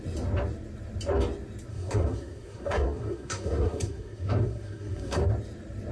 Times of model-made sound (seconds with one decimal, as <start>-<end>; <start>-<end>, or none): 1.7-5.2